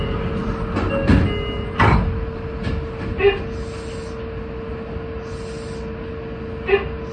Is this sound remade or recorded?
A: recorded